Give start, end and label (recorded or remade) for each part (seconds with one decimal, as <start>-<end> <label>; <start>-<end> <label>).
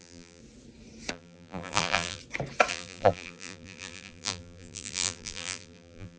0.0-0.4 remade; 0.4-1.1 recorded; 1.1-2.2 remade; 2.2-2.7 recorded; 2.7-6.2 remade